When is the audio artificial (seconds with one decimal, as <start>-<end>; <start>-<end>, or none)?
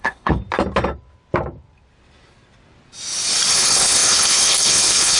0.0-0.4; 3.5-5.2